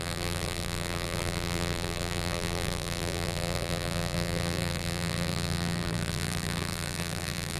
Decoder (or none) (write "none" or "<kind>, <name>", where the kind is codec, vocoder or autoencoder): vocoder, BigVGAN v2